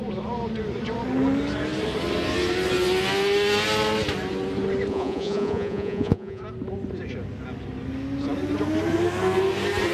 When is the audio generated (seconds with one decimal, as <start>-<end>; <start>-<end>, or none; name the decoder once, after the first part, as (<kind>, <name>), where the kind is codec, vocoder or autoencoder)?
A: 4.9-6.4 (vocoder, Vocos)